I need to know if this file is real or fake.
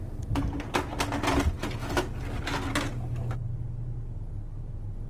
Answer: real